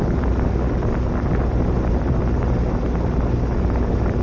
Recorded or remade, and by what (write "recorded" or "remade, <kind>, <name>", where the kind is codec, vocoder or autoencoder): recorded